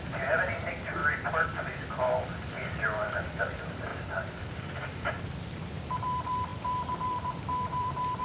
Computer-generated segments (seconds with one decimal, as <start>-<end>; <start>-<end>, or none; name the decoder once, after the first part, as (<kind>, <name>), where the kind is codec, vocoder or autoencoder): 0.0-1.0 (vocoder, BigVGAN v2); 2.2-8.2